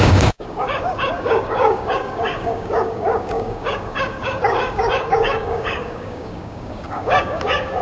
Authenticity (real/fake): fake